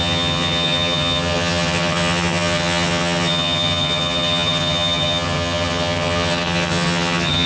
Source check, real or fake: fake